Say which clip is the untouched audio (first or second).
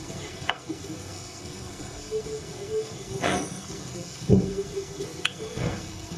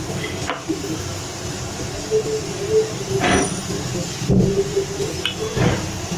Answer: second